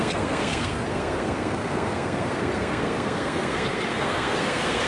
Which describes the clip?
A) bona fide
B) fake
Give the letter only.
B